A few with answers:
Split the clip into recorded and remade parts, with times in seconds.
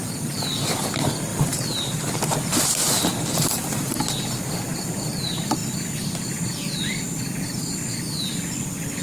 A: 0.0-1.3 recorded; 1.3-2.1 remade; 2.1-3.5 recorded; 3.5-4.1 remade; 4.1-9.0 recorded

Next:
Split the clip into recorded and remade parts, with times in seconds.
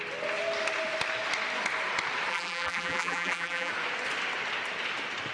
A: 0.0-2.3 recorded; 2.3-3.7 remade; 3.7-5.3 recorded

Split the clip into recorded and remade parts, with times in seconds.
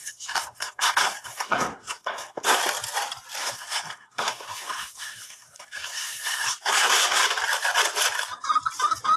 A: 0.0-2.6 remade; 2.6-3.4 recorded; 3.4-7.2 remade; 7.2-9.2 recorded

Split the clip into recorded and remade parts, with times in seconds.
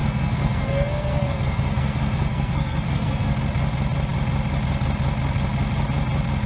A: 0.0-3.3 remade; 3.3-6.5 recorded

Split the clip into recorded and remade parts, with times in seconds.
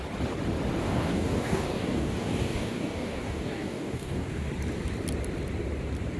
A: 0.0-0.8 recorded; 0.8-4.5 remade; 4.5-6.2 recorded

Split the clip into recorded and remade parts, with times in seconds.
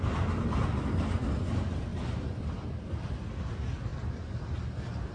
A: 0.0-1.9 recorded; 1.9-3.1 remade; 3.1-3.9 recorded; 3.9-4.5 remade; 4.5-5.1 recorded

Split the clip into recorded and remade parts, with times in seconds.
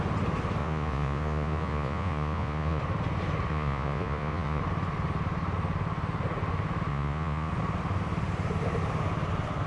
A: 0.0-0.6 recorded; 0.6-2.8 remade; 2.8-3.5 recorded; 3.5-4.6 remade; 4.6-6.9 recorded; 6.9-7.5 remade; 7.5-9.7 recorded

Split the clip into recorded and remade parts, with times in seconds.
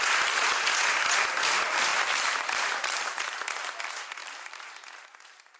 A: 0.0-1.9 recorded; 1.9-3.2 remade; 3.2-4.2 recorded; 4.2-4.7 remade; 4.7-5.6 recorded